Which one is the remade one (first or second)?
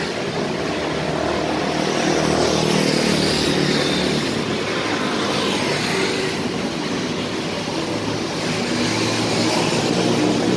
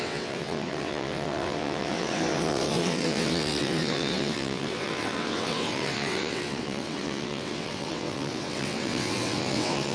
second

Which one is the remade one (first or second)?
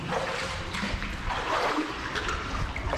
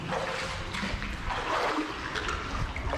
first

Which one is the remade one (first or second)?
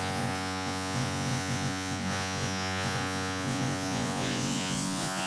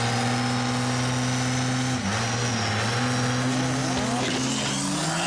first